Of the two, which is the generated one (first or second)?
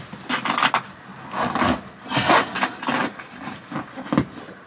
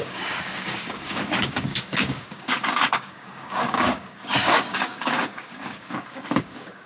second